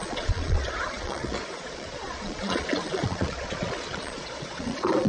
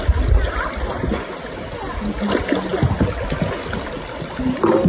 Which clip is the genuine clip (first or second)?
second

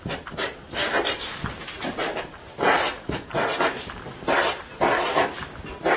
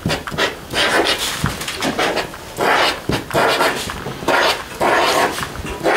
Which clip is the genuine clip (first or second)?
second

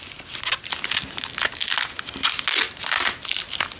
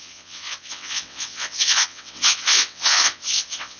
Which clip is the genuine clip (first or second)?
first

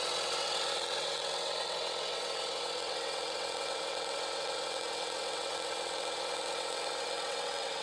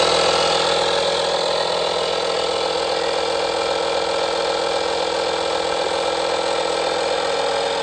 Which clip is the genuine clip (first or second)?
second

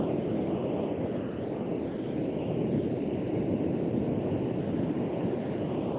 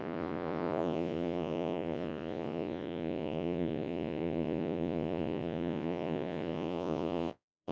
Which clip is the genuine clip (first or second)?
first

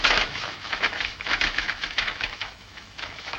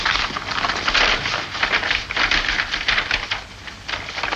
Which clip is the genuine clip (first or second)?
second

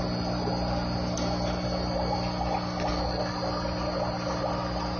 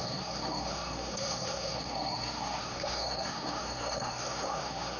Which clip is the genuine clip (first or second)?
first